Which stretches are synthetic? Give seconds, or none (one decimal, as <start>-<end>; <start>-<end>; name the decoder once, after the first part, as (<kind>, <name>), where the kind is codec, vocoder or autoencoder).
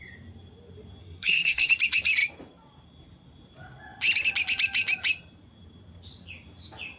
1.0-1.7 (codec, SNAC)